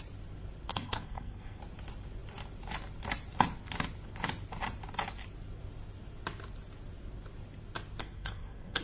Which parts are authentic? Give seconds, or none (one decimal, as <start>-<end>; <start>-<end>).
0.0-0.7; 1.6-8.0